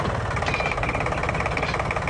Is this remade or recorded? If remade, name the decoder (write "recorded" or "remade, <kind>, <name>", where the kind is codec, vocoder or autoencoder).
recorded